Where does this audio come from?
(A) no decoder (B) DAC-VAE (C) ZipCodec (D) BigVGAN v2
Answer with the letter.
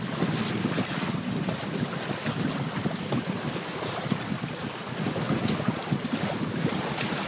D